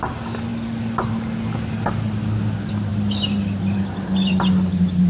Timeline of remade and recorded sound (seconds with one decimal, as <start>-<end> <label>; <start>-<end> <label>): 0.0-5.1 recorded